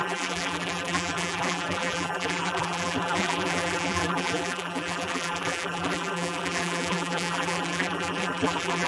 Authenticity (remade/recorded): remade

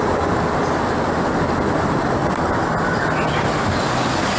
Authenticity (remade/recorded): recorded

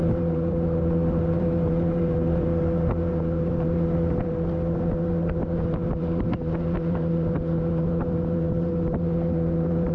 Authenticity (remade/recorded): remade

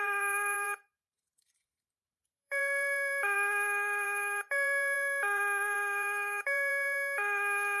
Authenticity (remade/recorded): remade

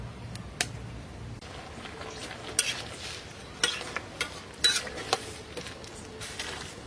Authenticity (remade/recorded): recorded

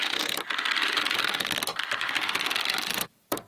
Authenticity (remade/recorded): remade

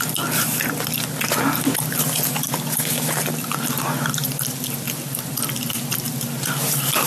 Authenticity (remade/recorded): recorded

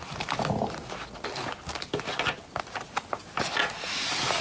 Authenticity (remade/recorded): recorded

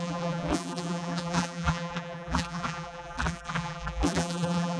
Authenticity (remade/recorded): remade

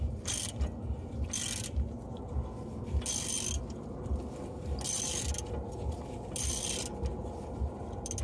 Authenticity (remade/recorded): recorded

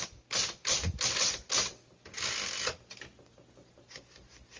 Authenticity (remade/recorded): recorded